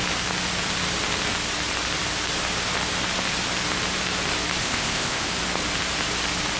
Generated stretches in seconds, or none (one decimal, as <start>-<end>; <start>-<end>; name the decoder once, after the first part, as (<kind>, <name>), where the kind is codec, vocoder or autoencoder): 4.6-5.3 (codec, ZipCodec)